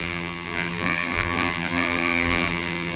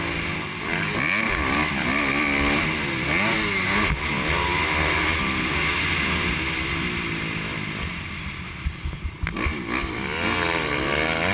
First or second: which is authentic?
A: second